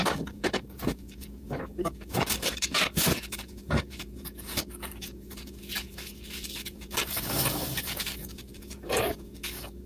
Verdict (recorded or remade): remade